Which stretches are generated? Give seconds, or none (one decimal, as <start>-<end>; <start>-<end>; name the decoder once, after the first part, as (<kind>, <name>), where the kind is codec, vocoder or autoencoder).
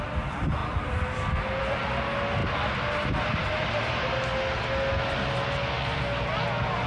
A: none